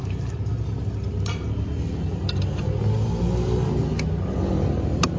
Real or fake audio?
real